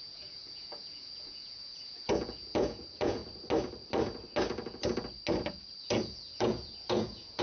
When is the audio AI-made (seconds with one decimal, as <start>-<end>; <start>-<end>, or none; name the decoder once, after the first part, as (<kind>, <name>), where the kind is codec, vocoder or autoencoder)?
0.0-3.2 (vocoder, Vocos); 5.8-7.4